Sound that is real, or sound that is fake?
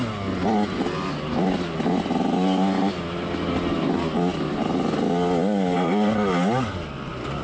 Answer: real